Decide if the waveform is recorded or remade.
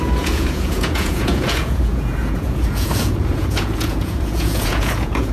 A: remade